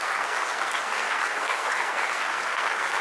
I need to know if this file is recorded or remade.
remade